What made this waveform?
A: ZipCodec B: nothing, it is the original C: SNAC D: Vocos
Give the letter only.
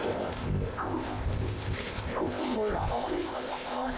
A